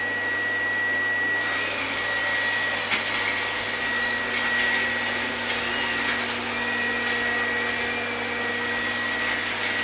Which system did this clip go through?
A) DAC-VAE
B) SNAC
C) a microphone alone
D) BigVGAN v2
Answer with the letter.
C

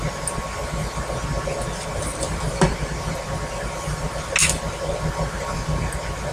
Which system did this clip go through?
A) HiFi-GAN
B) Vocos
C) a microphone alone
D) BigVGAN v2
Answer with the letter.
C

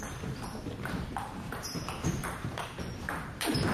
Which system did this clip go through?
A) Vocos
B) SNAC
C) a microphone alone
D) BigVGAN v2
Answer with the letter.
D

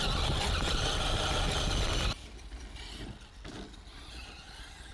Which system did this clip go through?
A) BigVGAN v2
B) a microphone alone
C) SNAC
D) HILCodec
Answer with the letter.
B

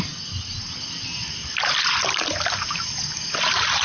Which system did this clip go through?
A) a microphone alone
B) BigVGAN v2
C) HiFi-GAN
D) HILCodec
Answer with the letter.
A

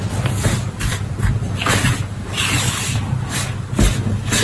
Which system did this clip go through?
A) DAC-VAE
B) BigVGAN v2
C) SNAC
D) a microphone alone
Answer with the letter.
D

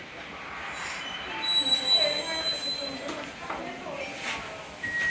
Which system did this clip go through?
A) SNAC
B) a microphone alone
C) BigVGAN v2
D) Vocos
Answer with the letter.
B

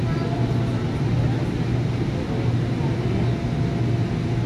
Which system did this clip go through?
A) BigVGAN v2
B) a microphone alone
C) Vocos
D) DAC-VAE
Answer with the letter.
B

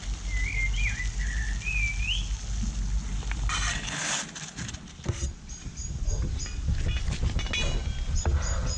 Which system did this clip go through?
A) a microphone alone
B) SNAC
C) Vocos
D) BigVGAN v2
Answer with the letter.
A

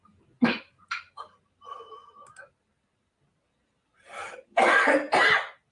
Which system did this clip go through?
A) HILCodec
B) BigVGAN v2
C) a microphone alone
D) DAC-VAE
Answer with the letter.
C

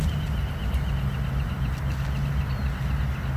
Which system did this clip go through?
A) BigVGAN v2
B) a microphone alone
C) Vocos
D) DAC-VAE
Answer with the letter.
B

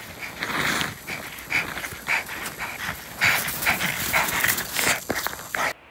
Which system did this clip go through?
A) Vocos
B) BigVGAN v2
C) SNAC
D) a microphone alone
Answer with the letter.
D